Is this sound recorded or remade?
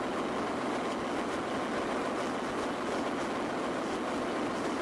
recorded